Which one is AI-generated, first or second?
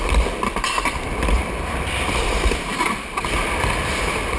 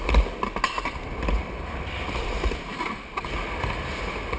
first